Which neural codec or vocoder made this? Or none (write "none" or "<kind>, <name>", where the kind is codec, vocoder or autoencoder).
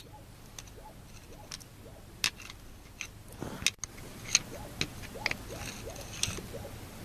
none